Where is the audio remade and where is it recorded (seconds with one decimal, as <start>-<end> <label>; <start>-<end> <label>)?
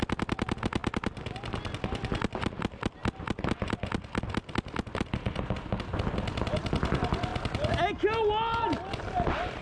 0.0-9.6 recorded